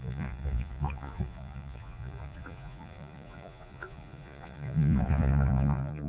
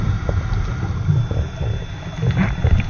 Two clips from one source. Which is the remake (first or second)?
first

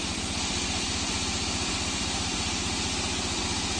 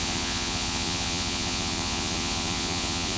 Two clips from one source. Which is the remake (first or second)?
second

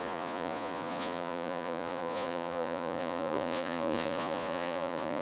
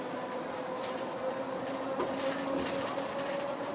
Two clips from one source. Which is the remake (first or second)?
first